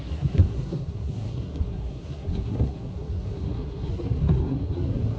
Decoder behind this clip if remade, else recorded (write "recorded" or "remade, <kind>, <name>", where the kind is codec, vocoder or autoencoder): remade, codec, SNAC